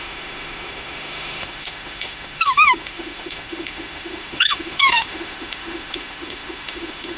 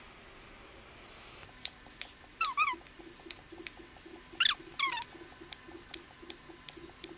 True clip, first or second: second